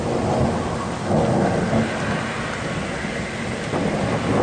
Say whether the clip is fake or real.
real